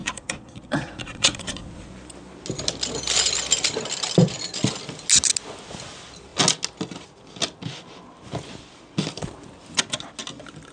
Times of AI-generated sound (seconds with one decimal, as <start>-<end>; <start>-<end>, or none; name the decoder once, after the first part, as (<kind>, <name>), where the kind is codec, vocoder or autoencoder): 0.0-1.9 (vocoder, Vocos)